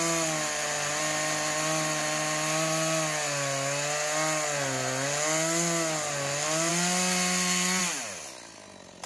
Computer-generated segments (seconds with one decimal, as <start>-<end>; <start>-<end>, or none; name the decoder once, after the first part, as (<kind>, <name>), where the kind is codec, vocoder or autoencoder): none